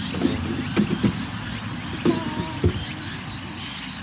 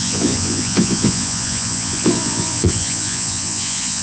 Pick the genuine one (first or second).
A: first